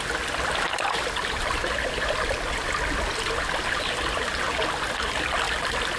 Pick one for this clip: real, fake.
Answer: real